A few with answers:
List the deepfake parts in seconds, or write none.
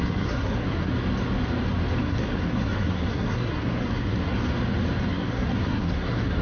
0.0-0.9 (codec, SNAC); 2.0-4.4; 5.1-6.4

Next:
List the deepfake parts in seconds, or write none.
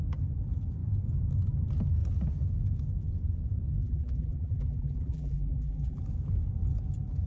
3.8-6.0 (vocoder, BigVGAN v2)